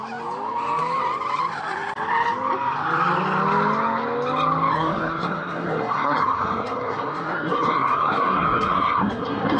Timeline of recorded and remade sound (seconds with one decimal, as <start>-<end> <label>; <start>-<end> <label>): 0.0-4.7 recorded; 4.7-9.6 remade